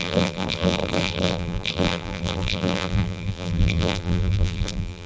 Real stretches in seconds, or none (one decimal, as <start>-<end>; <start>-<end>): none

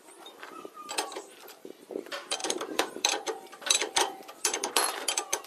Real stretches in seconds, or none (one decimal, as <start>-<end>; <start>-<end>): none

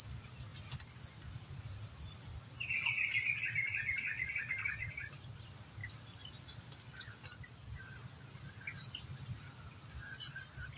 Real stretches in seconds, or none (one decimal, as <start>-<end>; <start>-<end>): 0.0-10.8

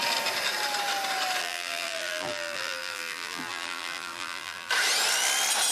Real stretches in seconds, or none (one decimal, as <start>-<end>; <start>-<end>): 0.0-1.4; 4.7-5.7

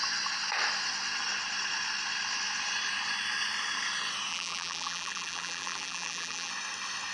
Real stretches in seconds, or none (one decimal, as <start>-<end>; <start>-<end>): 0.0-4.3; 6.5-7.1

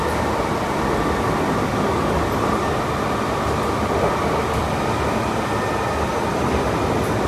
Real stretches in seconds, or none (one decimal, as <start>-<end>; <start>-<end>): 0.0-7.3